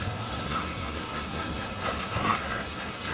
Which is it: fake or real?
fake